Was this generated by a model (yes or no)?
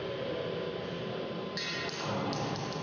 no